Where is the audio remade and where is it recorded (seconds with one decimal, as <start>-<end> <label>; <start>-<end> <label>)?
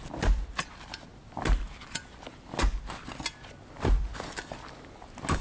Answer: 0.0-5.4 recorded